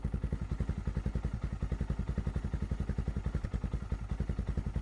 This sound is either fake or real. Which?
real